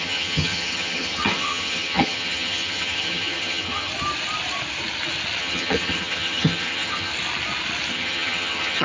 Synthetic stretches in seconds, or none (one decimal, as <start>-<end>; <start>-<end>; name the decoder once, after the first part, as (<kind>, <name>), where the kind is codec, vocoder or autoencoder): 0.0-3.9 (vocoder, HiFi-GAN); 5.4-7.1; 7.9-8.8